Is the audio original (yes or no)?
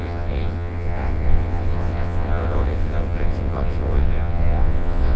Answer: no